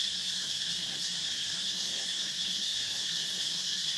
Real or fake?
fake